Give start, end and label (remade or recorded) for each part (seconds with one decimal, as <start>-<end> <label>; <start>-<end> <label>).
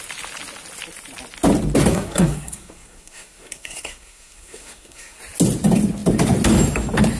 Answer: 0.0-1.9 recorded; 1.9-5.2 remade; 5.2-7.2 recorded